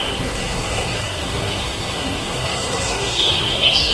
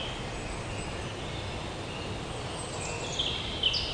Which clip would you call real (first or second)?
second